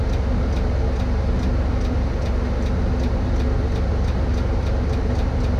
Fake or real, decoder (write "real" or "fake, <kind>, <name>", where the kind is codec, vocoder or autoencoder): real